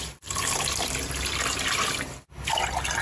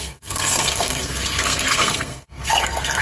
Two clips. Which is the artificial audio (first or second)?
second